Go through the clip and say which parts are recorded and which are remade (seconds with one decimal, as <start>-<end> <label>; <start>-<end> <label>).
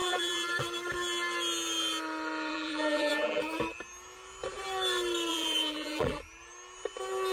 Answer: 0.0-0.5 remade; 0.5-2.5 recorded; 2.5-3.4 remade; 3.4-5.3 recorded; 5.3-6.2 remade; 6.2-7.3 recorded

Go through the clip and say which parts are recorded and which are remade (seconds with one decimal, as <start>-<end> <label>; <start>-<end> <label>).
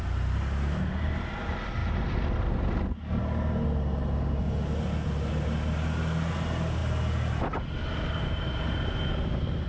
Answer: 0.0-9.7 recorded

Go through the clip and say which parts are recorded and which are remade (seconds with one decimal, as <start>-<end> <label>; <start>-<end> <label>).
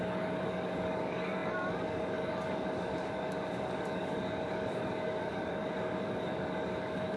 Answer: 0.0-7.2 remade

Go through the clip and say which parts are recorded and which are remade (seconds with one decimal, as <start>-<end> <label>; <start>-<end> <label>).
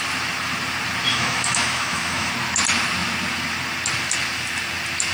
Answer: 0.0-1.1 recorded; 1.1-2.3 remade; 2.3-5.1 recorded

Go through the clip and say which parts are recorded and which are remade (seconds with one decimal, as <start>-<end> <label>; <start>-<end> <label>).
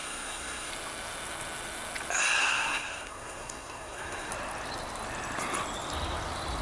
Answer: 0.0-0.7 remade; 0.7-2.4 recorded; 2.4-4.3 remade; 4.3-6.6 recorded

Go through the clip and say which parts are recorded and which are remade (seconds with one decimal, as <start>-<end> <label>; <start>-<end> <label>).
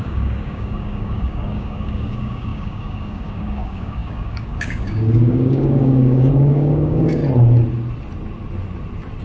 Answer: 0.0-7.2 remade; 7.2-9.2 recorded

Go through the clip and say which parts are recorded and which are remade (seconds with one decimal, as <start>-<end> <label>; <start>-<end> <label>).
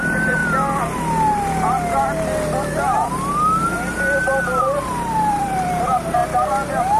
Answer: 0.0-0.4 remade; 0.4-4.6 recorded; 4.6-6.2 remade; 6.2-7.0 recorded